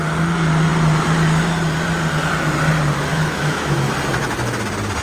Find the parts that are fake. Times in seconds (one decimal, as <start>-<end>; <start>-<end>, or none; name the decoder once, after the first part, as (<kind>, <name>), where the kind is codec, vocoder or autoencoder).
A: 3.1-3.9 (autoencoder, DAC-VAE)